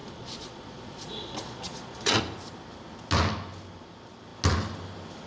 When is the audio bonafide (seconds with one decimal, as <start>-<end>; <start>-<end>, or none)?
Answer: 2.2-5.3